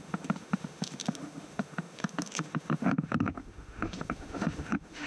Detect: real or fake fake